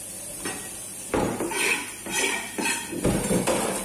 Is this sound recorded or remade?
remade